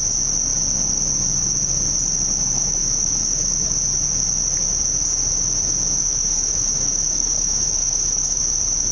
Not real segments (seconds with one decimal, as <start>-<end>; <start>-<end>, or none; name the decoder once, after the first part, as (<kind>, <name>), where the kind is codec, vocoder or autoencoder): 2.5-3.7 (autoencoder, DAC-VAE); 6.0-8.4